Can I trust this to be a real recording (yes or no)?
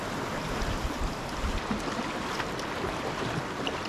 yes